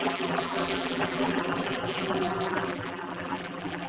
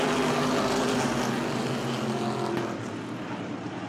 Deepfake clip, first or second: first